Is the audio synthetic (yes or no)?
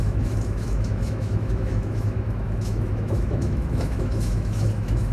yes